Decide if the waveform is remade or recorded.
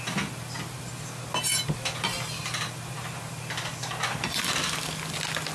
recorded